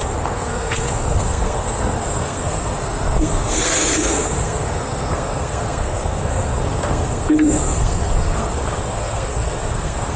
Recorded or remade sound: remade